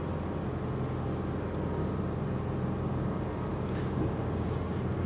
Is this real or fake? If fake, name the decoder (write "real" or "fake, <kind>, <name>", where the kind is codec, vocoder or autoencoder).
real